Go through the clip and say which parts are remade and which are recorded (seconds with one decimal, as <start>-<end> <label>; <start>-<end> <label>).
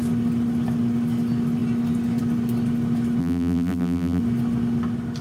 0.0-3.2 recorded; 3.2-4.2 remade; 4.2-5.2 recorded